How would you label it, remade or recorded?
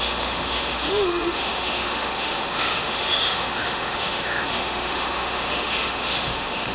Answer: remade